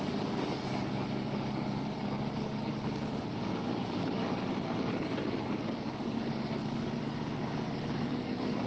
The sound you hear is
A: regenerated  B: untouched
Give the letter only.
A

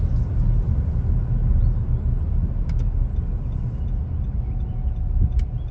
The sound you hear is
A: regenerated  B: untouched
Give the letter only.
B